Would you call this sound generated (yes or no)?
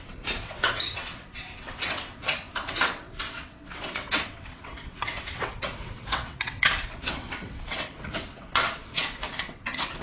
yes